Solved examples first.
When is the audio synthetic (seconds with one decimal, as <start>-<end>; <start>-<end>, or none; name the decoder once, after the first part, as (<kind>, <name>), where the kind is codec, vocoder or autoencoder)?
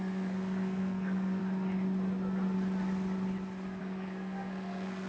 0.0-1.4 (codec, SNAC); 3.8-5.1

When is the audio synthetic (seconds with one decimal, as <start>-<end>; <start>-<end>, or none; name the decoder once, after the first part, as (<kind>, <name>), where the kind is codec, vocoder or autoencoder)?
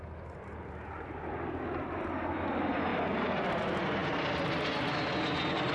none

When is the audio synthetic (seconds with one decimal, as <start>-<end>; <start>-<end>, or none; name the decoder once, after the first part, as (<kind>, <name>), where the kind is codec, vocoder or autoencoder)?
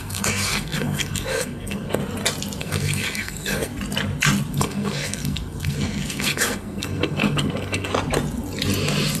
0.0-2.0 (codec, SNAC); 2.6-3.7; 4.5-7.9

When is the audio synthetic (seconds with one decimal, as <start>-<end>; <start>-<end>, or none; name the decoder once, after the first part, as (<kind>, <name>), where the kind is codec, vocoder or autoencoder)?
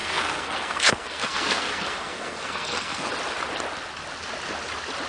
0.0-3.1 (codec, SNAC)